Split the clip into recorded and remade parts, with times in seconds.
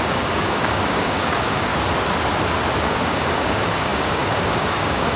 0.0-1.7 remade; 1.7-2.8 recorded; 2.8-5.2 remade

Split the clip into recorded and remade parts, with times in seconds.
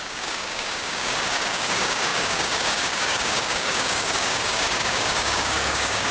0.0-6.1 remade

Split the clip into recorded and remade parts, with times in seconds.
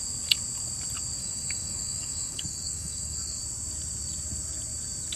0.0-1.2 recorded; 1.2-3.4 remade; 3.4-5.2 recorded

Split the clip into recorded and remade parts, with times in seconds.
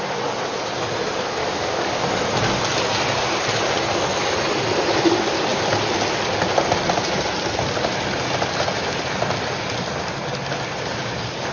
0.0-1.4 recorded; 1.4-1.9 remade; 1.9-11.5 recorded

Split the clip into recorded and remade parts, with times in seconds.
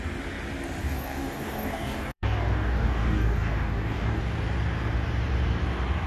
0.0-0.8 recorded; 0.8-4.2 remade; 4.2-6.1 recorded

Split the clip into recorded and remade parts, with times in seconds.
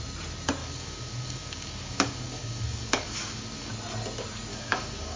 0.0-0.6 recorded; 0.6-3.7 remade; 3.7-4.5 recorded; 4.5-5.2 remade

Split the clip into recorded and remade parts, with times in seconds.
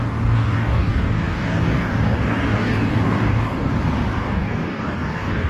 0.0-3.7 remade; 3.7-4.2 recorded; 4.2-5.5 remade